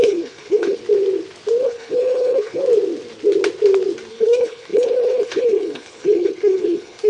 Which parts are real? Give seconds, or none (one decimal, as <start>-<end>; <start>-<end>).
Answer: 0.8-1.6; 2.6-4.1